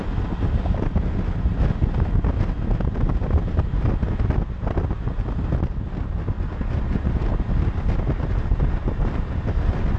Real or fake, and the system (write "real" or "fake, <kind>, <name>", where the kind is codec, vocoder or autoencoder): real